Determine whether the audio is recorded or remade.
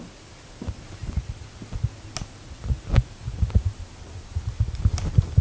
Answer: recorded